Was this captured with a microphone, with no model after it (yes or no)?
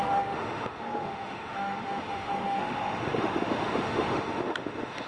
no